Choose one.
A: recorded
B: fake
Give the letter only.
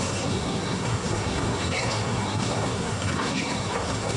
B